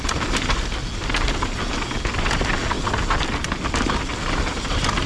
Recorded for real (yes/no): yes